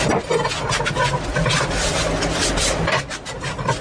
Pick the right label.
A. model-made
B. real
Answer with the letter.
B